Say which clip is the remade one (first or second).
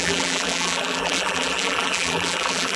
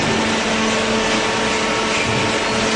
first